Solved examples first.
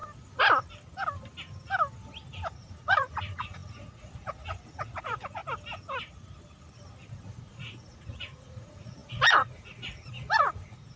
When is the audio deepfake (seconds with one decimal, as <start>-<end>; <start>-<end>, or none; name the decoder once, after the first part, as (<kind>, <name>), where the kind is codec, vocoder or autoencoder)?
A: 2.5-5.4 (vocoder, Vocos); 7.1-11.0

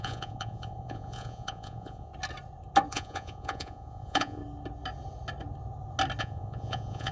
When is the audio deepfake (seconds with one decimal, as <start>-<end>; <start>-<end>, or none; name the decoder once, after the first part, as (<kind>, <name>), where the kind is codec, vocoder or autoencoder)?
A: 0.0-2.1 (vocoder, Vocos); 2.9-4.4; 6.2-7.1

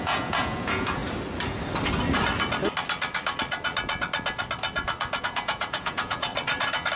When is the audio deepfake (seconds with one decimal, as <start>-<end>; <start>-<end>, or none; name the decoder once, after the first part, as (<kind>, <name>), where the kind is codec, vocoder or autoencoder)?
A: 0.0-1.0 (vocoder, Vocos); 5.2-6.3